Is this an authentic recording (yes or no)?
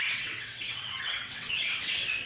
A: no